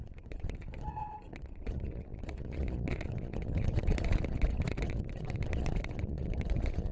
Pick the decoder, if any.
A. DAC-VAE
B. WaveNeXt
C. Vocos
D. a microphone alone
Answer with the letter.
C